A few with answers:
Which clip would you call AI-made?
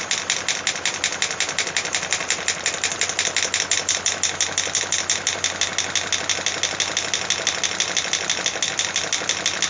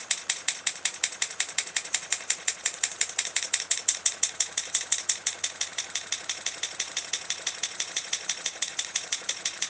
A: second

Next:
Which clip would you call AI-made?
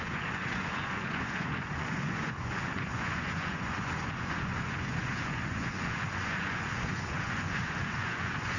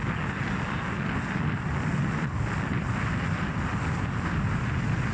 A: first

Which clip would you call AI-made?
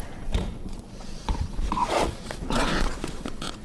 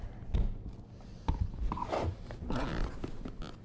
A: first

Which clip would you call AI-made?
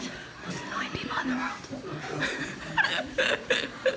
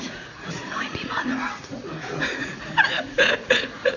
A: second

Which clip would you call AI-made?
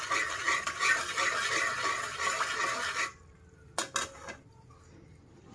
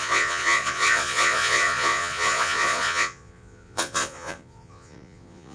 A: second